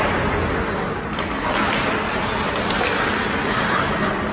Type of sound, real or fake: real